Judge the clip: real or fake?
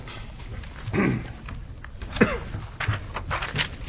real